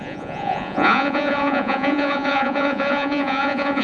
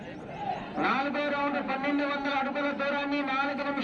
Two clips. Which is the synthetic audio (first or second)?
first